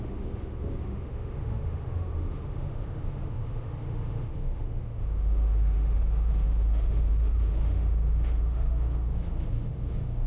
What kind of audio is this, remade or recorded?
remade